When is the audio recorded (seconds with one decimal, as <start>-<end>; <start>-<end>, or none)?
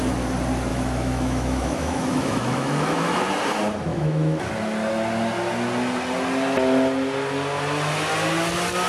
0.0-0.7; 3.2-3.9; 4.5-8.9